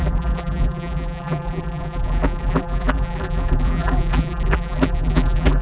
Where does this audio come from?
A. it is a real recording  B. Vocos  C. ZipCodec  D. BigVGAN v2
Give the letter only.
D